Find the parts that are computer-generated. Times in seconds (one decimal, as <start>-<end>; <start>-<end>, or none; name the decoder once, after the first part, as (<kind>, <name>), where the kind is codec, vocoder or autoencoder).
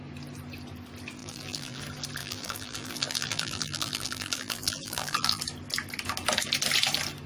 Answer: 1.2-1.8 (vocoder, BigVGAN v2); 2.2-5.4